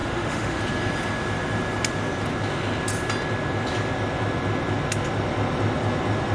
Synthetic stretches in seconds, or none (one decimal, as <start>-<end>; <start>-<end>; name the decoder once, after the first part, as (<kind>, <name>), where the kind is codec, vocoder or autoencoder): 0.0-0.6 (autoencoder, DAC-VAE)